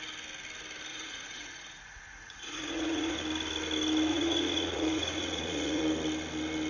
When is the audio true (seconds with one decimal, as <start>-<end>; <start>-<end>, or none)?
0.0-0.9; 3.2-4.1; 5.8-6.7